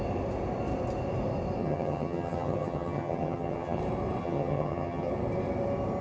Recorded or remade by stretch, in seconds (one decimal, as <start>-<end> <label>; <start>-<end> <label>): 0.0-1.6 recorded; 1.6-3.8 remade; 3.8-4.2 recorded; 4.2-5.1 remade; 5.1-6.0 recorded